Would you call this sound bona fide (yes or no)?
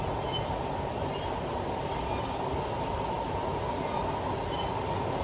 yes